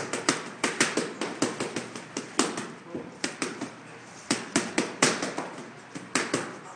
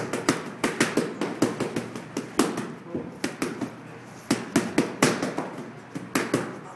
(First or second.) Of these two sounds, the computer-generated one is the first